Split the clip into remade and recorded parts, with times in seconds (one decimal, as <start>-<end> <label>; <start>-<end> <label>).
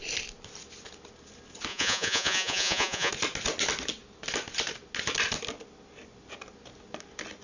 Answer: 0.0-1.7 recorded; 1.7-3.1 remade; 3.1-7.4 recorded